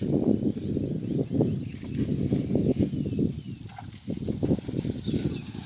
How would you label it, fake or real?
real